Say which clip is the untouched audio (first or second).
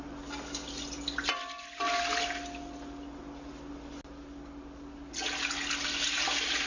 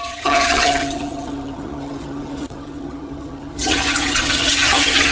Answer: first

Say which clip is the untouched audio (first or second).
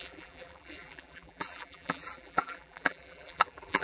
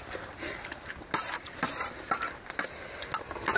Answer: second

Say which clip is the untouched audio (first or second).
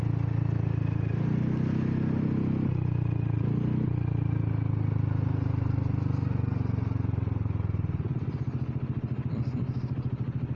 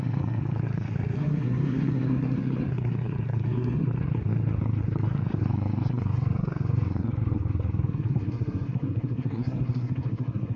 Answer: first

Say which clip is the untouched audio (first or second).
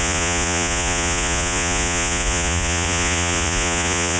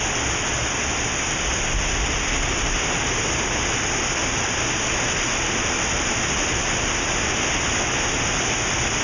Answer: second